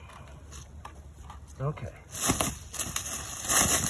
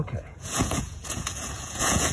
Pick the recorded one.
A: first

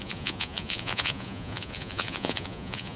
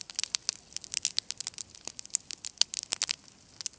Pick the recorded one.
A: second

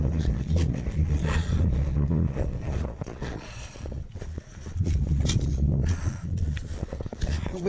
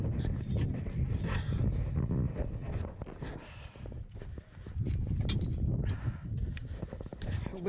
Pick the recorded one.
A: second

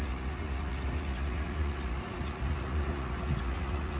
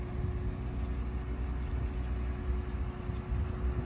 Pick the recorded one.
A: second